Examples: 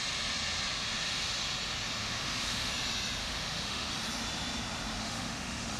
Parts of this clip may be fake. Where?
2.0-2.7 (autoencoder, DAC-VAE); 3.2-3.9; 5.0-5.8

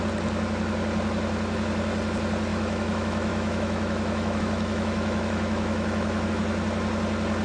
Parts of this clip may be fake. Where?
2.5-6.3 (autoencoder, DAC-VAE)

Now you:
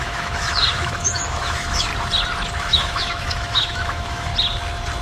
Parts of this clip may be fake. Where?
0.0-1.9 (autoencoder, DAC-VAE); 2.6-4.3